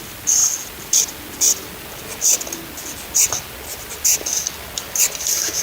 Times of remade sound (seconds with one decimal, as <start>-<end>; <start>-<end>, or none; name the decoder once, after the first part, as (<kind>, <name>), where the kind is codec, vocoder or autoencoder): none